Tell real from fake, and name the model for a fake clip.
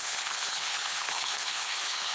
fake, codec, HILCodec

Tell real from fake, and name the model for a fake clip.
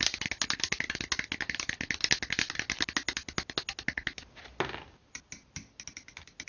real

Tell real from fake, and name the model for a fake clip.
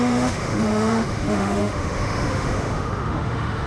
fake, autoencoder, DAC-VAE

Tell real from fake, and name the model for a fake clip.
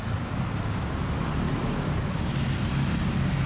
real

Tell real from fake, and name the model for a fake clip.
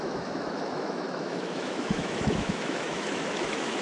fake, autoencoder, DAC-VAE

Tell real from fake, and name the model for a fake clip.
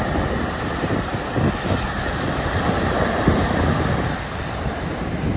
real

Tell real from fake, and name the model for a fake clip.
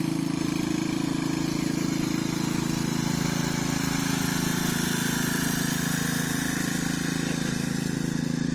real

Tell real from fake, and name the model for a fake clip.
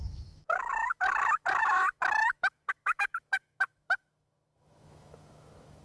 fake, autoencoder, DAC-VAE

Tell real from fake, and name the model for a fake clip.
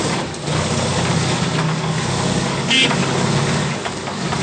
fake, codec, DAC